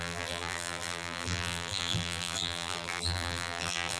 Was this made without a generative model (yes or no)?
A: no